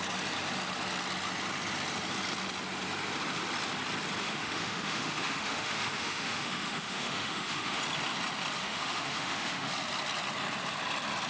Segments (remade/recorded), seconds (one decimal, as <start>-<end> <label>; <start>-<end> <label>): 0.0-4.2 recorded; 4.2-7.8 remade; 7.8-8.6 recorded; 8.6-9.7 remade; 9.7-11.3 recorded